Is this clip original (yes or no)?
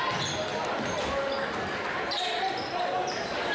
yes